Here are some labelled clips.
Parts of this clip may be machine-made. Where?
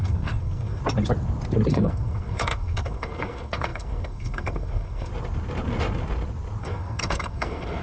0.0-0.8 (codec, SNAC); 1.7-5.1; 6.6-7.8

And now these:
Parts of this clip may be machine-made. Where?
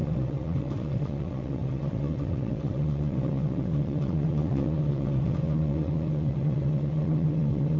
0.0-7.8 (vocoder, WaveNeXt)